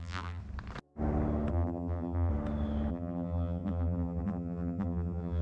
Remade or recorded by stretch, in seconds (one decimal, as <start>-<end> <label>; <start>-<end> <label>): 0.0-0.4 remade; 0.4-1.5 recorded; 1.5-2.3 remade; 2.3-2.9 recorded; 2.9-5.4 remade